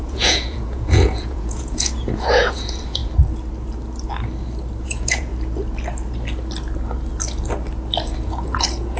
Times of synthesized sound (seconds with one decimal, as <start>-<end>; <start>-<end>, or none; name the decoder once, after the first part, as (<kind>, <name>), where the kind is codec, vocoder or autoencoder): 0.0-3.0 (vocoder, Vocos); 4.8-5.3; 8.2-9.0